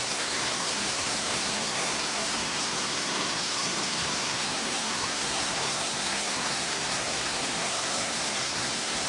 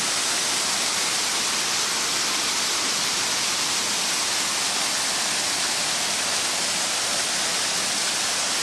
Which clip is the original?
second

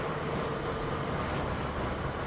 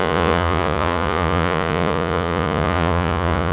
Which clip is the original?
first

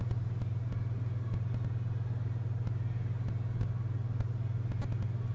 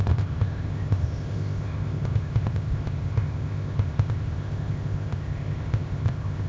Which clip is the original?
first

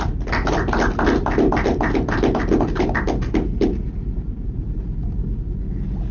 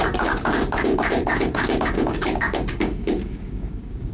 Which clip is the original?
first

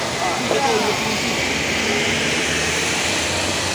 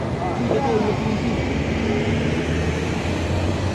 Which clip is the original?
second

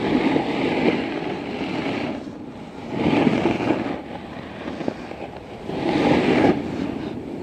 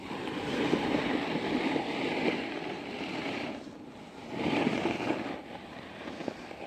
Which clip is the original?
first